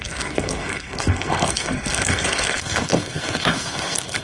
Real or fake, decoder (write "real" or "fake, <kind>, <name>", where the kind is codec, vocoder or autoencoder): fake, codec, SNAC